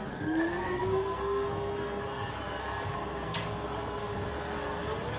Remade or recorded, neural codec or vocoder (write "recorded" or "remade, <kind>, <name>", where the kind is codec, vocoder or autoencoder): remade, codec, SNAC